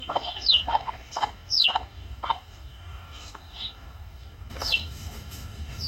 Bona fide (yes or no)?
no